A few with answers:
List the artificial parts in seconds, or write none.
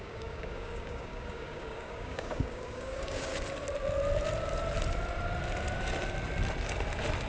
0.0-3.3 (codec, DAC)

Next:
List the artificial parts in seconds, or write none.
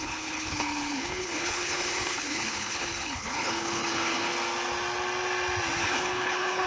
0.0-4.3 (codec, HILCodec); 5.8-6.7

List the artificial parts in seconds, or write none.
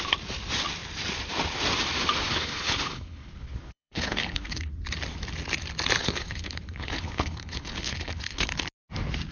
2.3-4.7 (codec, HILCodec); 6.0-8.5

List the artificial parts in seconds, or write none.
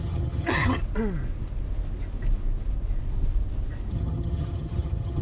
0.0-0.8 (vocoder, HiFi-GAN); 3.9-5.2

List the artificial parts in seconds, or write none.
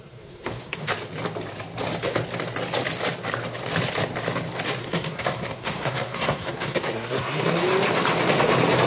0.0-0.9 (codec, SNAC); 4.8-7.5